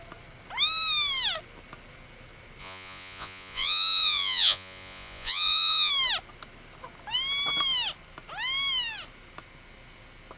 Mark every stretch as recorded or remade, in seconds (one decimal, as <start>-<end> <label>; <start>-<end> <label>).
0.0-2.6 recorded; 2.6-5.9 remade; 5.9-10.4 recorded